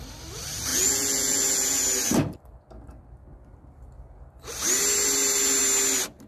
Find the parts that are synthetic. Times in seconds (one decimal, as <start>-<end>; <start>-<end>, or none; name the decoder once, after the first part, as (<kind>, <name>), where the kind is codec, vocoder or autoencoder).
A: 0.7-1.8 (vocoder, Vocos)

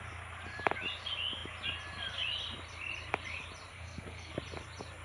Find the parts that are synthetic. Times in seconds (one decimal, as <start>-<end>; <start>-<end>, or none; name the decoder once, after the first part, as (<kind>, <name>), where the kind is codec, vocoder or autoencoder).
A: 3.7-4.3 (codec, SNAC)

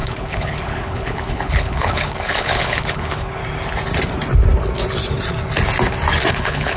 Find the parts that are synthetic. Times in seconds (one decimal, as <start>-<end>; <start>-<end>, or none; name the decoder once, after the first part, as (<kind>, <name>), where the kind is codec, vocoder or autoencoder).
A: 0.0-3.4 (codec, HILCodec); 6.3-6.8